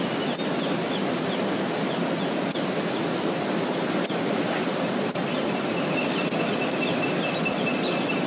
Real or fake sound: real